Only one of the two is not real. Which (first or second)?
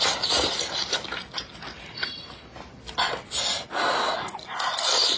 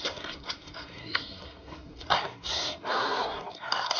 second